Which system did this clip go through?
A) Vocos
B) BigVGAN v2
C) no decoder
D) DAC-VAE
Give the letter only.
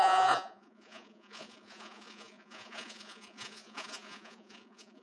A